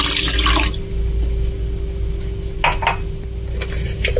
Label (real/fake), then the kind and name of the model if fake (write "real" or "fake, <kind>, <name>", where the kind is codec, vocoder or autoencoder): real